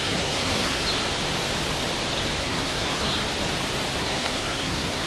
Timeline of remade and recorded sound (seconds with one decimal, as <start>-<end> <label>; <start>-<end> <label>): 0.0-0.8 remade; 0.8-2.4 recorded; 2.4-3.1 remade; 3.1-4.0 recorded; 4.0-5.1 remade